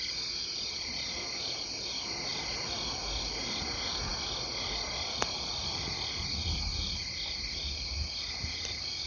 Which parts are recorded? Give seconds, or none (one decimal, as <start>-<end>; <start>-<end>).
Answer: 0.0-9.1